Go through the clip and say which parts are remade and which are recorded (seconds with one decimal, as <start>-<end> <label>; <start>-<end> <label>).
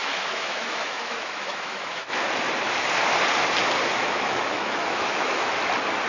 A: 0.0-2.2 remade; 2.2-4.0 recorded; 4.0-5.6 remade; 5.6-6.1 recorded